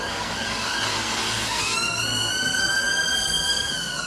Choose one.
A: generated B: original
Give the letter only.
A